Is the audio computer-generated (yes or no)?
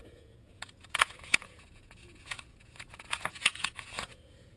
yes